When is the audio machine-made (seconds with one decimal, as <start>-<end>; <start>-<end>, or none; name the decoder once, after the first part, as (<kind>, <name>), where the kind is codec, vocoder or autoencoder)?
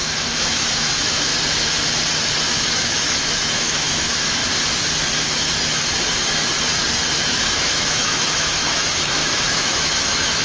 0.0-1.3 (autoencoder, DAC-VAE); 2.7-4.4; 7.2-10.4